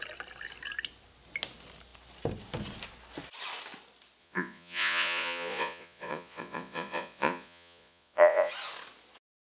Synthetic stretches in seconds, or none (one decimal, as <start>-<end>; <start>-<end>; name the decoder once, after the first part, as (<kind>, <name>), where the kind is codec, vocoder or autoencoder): 4.2-8.5 (vocoder, Vocos)